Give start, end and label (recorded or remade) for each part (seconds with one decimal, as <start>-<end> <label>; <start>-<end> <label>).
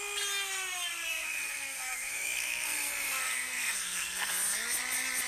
0.0-1.1 recorded; 1.1-4.3 remade; 4.3-5.3 recorded